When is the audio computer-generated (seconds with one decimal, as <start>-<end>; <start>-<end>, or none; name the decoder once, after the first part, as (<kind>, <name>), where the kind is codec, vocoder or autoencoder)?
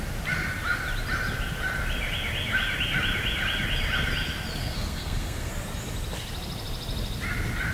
4.6-5.5 (codec, SNAC)